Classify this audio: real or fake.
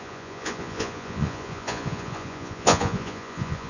fake